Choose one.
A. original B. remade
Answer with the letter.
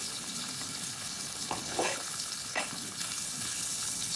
B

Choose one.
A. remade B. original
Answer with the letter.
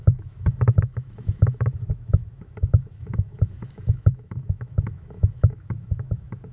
A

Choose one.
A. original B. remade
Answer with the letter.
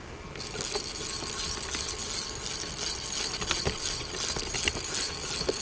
A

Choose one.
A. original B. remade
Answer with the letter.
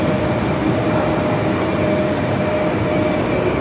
A